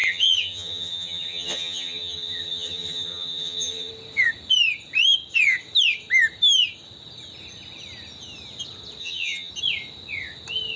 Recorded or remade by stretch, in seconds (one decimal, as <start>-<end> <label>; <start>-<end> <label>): 0.0-3.9 remade; 3.9-9.0 recorded; 9.0-9.5 remade; 9.5-10.8 recorded

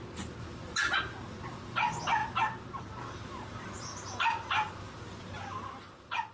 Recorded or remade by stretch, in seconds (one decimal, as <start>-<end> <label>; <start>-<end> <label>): 0.0-6.3 recorded